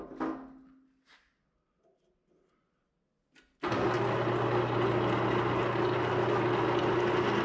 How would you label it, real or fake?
real